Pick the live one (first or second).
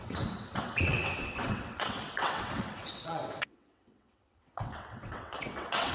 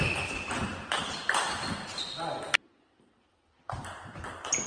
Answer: second